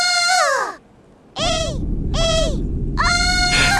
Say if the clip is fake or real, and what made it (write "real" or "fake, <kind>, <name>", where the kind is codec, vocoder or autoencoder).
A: real